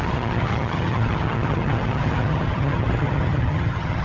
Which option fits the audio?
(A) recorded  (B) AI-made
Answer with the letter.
B